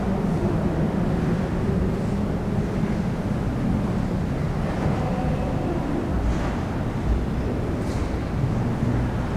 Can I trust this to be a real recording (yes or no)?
yes